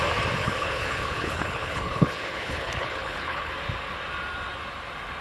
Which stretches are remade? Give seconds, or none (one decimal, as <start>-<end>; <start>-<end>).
0.4-3.5